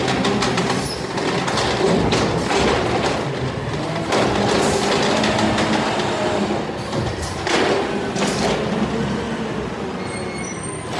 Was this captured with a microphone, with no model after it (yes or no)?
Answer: yes